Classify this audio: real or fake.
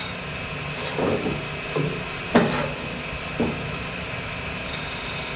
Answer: real